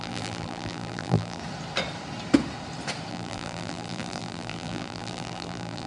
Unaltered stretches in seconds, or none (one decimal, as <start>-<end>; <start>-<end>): 1.4-3.1